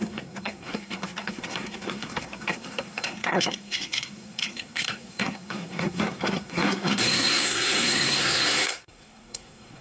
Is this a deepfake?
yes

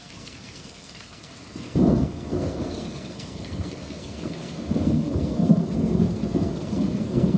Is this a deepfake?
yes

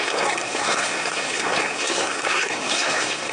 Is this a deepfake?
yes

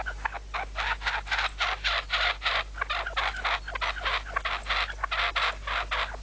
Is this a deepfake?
no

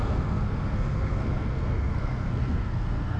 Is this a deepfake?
yes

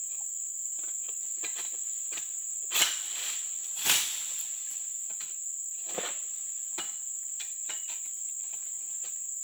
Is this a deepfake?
no